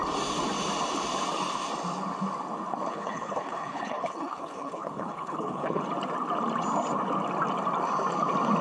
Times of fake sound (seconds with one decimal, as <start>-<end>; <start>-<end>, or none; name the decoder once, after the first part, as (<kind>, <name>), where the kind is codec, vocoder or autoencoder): 2.9-5.8 (codec, HILCodec)